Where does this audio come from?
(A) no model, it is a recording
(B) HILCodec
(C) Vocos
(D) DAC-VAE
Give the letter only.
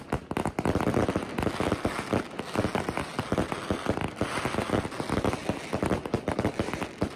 A